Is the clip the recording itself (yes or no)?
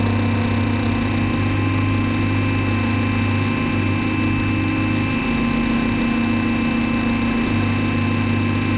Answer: yes